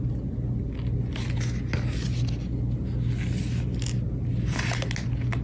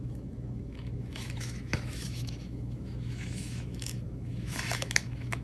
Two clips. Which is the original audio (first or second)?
first